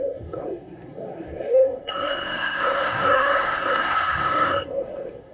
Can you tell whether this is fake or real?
fake